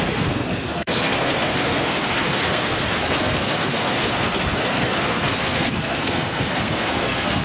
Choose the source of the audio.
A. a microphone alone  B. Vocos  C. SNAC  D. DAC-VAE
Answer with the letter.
C